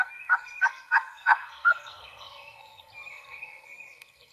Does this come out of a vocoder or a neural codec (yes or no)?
yes